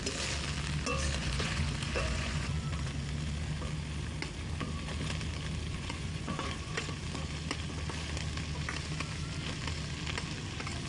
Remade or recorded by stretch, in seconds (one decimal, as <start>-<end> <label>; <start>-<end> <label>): 0.0-1.2 recorded; 1.2-3.1 remade; 3.1-5.7 recorded; 5.7-7.0 remade; 7.0-10.9 recorded

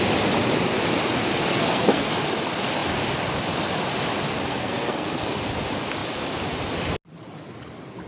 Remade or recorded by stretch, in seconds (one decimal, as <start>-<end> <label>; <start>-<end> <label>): 0.0-1.4 recorded; 1.4-2.1 remade; 2.1-4.5 recorded; 4.5-5.5 remade; 5.5-8.1 recorded